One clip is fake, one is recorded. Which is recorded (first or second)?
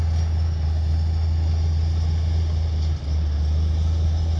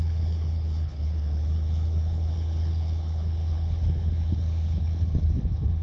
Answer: first